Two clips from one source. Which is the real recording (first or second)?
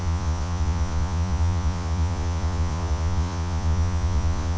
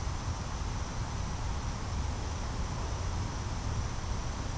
second